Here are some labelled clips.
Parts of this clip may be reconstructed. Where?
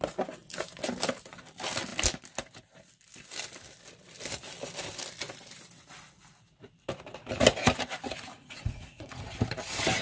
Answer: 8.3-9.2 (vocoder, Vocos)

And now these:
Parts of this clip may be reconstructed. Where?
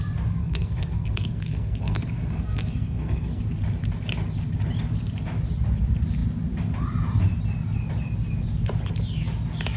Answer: 0.4-3.4 (codec, SNAC)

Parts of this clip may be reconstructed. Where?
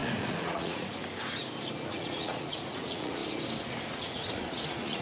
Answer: 0.0-1.0 (vocoder, Vocos); 1.9-3.2; 3.9-5.0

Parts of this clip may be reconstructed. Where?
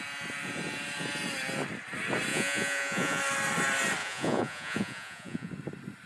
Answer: 2.3-3.2 (vocoder, Vocos); 4.0-5.5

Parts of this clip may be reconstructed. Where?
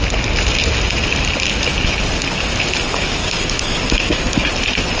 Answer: 3.2-4.5 (codec, DAC)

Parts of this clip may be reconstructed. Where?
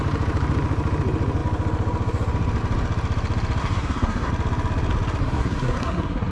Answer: 3.6-4.3 (codec, SNAC); 5.2-6.3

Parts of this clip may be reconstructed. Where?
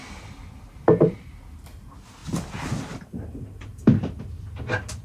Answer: none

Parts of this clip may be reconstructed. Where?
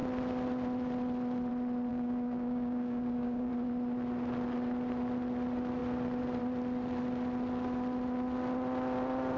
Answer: 1.9-3.5 (codec, DAC)